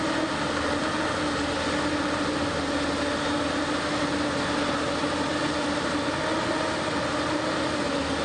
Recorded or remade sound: recorded